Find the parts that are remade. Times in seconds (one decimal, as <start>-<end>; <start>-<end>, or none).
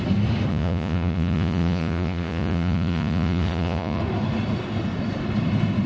0.5-4.0